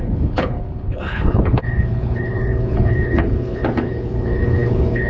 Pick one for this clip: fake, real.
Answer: fake